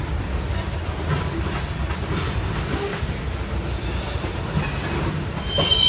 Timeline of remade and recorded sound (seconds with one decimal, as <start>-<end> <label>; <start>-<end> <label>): 0.0-5.9 recorded